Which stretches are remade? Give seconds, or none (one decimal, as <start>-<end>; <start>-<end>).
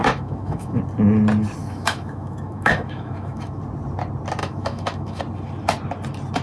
0.0-0.8; 1.6-3.6; 4.4-5.2